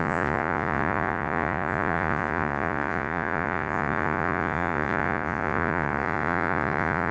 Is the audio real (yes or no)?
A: no